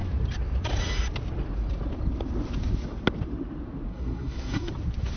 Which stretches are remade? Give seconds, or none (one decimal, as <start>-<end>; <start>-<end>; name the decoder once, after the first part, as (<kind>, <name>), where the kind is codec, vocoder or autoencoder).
3.9-4.7 (codec, SNAC)